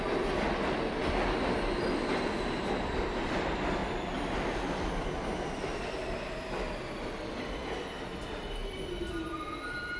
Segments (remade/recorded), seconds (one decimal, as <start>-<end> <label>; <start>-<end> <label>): 0.0-10.0 recorded